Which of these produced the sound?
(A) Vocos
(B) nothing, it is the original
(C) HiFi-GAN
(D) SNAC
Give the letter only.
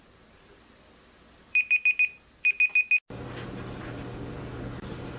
B